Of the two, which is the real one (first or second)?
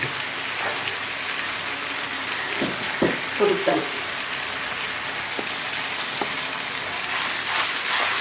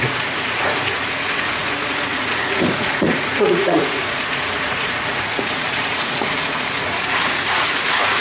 first